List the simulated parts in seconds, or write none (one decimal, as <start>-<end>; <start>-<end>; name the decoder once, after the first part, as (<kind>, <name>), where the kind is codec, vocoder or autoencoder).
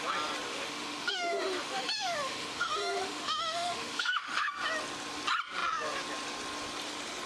0.5-4.5 (autoencoder, DAC-VAE)